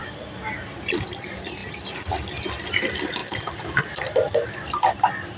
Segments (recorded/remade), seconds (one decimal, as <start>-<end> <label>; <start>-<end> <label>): 0.0-3.2 recorded; 3.2-3.9 remade; 3.9-5.4 recorded

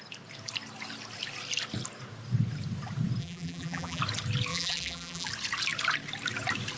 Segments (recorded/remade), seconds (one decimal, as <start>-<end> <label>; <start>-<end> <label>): 0.0-3.2 recorded; 3.2-4.0 remade; 4.0-4.5 recorded; 4.5-5.3 remade; 5.3-6.8 recorded